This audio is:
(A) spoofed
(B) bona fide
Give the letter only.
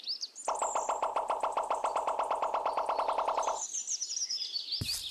B